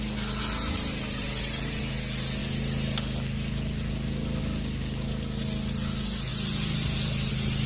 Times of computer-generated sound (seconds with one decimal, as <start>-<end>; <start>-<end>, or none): none